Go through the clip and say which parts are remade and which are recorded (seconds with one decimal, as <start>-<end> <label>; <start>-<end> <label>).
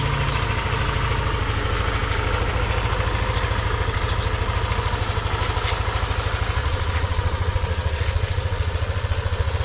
0.0-6.6 recorded; 6.6-9.6 remade